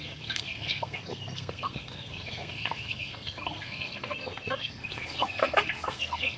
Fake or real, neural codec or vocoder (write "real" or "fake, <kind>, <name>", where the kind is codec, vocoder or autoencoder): fake, codec, SNAC